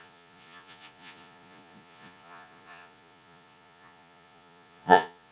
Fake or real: fake